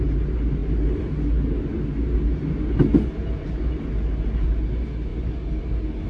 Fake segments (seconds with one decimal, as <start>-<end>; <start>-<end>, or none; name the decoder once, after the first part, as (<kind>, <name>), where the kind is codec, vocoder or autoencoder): none